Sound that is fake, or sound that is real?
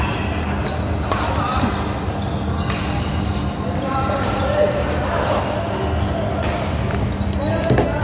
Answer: real